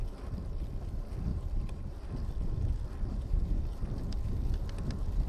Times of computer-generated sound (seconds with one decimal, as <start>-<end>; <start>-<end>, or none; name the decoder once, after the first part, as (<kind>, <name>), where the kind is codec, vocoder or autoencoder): 1.3-2.1 (vocoder, BigVGAN v2); 3.1-3.6